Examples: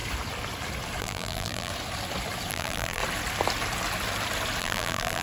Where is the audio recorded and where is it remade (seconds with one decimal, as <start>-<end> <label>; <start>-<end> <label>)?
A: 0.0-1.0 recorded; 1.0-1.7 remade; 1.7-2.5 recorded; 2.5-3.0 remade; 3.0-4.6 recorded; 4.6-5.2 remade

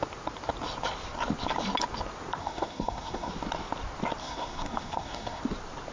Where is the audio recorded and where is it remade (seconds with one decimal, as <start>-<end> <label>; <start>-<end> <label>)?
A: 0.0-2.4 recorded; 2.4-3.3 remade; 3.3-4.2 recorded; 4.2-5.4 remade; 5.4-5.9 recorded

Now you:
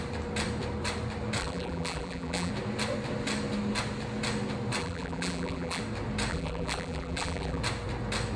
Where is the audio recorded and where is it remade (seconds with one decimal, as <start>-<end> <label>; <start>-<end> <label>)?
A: 0.0-1.4 recorded; 1.4-2.5 remade; 2.5-4.8 recorded; 4.8-5.8 remade; 5.8-6.3 recorded; 6.3-7.6 remade; 7.6-8.4 recorded